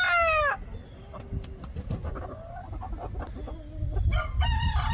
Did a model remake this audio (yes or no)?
no